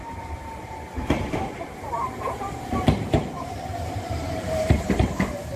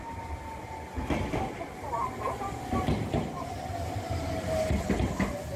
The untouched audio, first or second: second